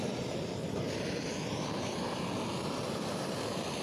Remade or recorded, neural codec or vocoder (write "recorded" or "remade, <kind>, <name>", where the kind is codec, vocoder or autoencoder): recorded